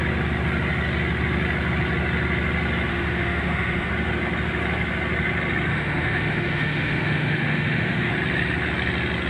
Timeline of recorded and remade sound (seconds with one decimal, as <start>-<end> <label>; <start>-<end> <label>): 0.0-2.9 recorded; 2.9-3.9 remade; 3.9-5.7 recorded; 5.7-8.1 remade; 8.1-9.3 recorded